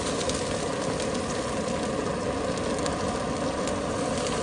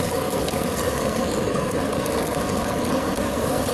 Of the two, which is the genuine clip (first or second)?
first